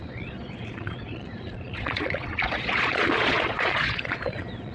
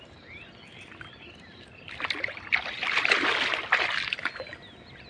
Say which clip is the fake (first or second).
first